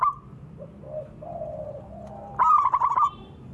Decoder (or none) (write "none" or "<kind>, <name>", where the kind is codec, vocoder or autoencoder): none